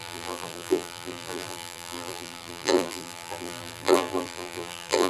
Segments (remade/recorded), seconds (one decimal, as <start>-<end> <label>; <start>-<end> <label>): 0.0-5.1 remade